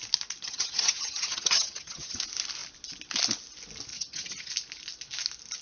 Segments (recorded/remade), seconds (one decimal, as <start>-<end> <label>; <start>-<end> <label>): 0.0-0.4 recorded; 0.4-2.2 remade; 2.2-3.9 recorded; 3.9-4.5 remade; 4.5-5.6 recorded